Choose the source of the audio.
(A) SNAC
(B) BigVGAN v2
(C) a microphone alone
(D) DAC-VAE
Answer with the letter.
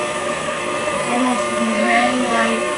A